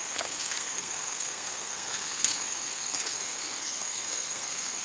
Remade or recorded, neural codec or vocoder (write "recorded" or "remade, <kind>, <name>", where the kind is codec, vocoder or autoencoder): remade, codec, SNAC